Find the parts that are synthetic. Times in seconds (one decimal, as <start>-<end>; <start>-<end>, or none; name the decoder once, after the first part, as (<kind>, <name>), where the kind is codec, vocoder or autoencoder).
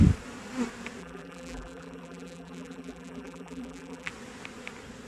1.0-4.1 (vocoder, BigVGAN v2)